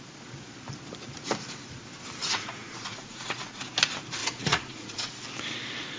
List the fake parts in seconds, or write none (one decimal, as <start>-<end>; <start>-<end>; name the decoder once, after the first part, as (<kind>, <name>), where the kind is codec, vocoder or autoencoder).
2.2-3.6 (vocoder, Vocos); 4.2-5.1